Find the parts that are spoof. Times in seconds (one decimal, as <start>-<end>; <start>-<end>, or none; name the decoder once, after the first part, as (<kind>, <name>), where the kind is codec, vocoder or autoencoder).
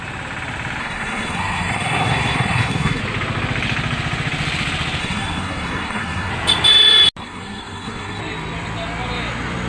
0.8-3.0 (codec, SNAC); 5.0-6.3; 7.2-8.2